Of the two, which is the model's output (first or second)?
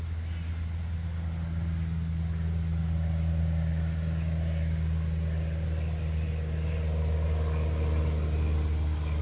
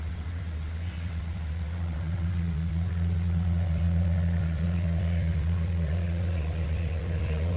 second